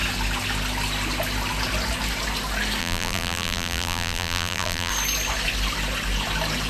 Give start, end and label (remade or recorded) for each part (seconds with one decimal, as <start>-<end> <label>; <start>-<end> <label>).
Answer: 0.0-2.8 recorded; 2.8-4.9 remade; 4.9-6.7 recorded